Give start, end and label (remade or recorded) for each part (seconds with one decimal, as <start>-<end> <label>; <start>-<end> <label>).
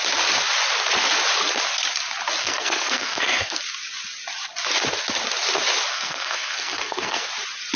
0.0-2.4 recorded; 2.4-3.6 remade; 3.6-5.9 recorded; 5.9-7.3 remade; 7.3-7.8 recorded